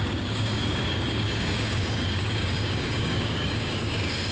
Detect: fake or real fake